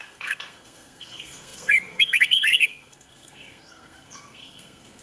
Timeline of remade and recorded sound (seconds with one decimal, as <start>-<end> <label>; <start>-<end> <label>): 0.0-5.0 remade